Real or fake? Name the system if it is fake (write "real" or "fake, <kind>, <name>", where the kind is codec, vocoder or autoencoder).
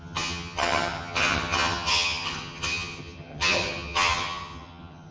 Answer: fake, vocoder, HiFi-GAN